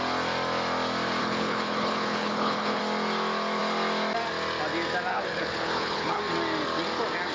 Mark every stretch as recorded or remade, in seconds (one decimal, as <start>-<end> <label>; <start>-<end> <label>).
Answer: 0.0-1.2 recorded; 1.2-2.8 remade; 2.8-5.1 recorded; 5.1-6.2 remade; 6.2-7.3 recorded